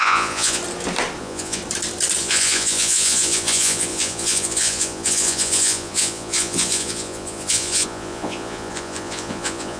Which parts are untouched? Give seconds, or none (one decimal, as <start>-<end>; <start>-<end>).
0.6-1.2; 1.6-2.2